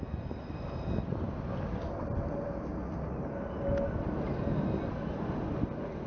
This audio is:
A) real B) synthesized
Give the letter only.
A